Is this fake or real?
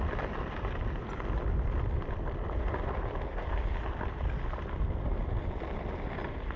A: real